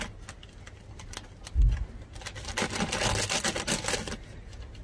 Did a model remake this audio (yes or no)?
no